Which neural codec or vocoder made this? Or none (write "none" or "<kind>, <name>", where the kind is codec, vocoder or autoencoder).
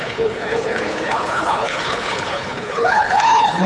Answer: codec, HILCodec